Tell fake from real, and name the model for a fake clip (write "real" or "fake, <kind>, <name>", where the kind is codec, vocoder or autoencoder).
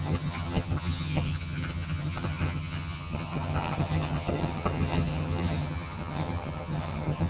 fake, vocoder, HiFi-GAN